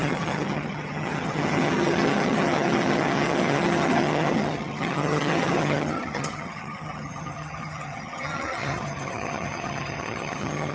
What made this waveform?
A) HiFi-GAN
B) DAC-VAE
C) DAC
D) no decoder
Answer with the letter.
A